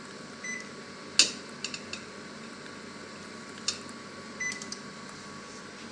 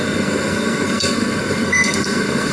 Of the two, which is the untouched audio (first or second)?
first